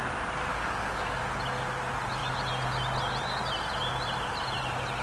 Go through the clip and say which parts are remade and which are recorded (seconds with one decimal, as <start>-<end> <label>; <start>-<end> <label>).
0.0-0.5 recorded; 0.5-1.2 remade; 1.2-5.0 recorded

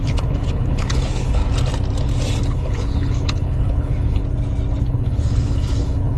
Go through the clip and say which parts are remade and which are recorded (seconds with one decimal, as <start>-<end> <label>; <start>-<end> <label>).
0.0-1.4 remade; 1.4-2.5 recorded; 2.5-4.2 remade; 4.2-4.8 recorded; 4.8-6.2 remade

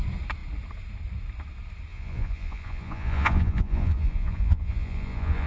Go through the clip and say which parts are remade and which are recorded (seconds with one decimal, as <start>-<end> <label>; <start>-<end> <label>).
0.0-1.9 recorded; 1.9-5.5 remade

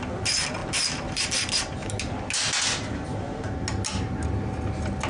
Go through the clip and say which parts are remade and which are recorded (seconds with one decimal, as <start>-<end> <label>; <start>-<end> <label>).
0.0-5.1 recorded